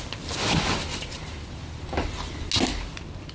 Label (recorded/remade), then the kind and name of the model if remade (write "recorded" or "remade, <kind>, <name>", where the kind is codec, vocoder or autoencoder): recorded